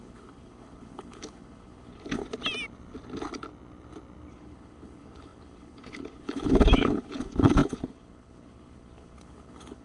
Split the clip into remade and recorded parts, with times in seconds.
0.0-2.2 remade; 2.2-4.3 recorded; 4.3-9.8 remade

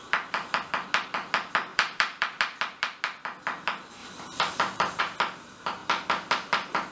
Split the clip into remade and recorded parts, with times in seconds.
0.0-1.7 recorded; 1.7-2.3 remade; 2.3-4.0 recorded; 4.0-5.0 remade; 5.0-6.9 recorded

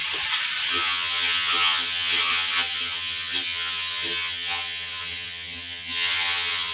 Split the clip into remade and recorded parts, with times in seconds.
0.0-0.7 recorded; 0.7-6.7 remade